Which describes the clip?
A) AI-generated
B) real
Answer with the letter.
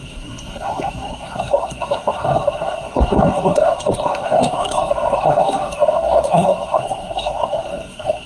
A